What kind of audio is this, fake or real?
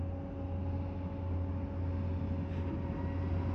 real